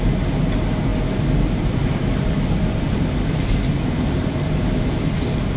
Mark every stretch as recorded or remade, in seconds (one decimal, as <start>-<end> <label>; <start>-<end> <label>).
0.0-5.6 recorded